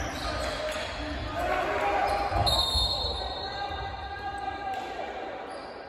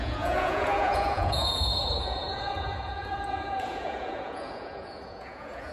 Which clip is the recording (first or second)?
first